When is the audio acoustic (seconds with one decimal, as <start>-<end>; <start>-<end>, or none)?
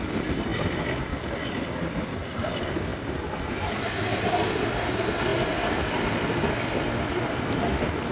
0.0-2.9; 3.5-5.3; 6.3-8.1